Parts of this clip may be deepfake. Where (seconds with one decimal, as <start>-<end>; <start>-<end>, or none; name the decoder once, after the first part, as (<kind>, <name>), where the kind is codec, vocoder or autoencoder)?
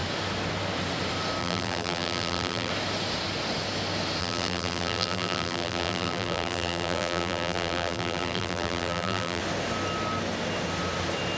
1.4-2.7 (vocoder, BigVGAN v2); 4.2-9.4